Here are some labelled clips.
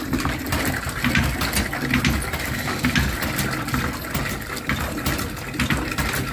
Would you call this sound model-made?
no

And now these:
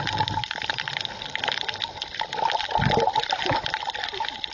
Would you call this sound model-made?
yes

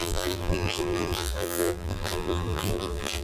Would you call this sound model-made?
yes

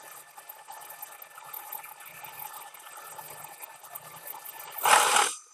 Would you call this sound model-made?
no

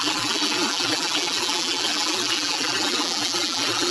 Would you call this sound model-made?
yes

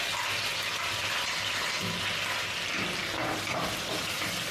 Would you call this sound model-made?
no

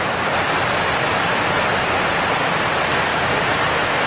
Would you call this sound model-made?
no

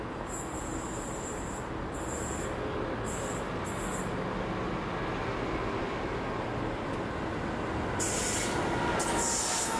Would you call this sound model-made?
no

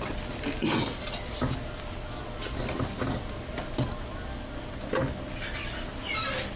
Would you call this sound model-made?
no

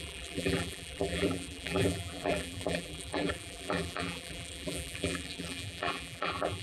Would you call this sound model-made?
yes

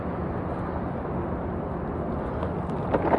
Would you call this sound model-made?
no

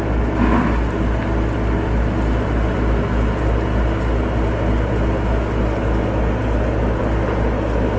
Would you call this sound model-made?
no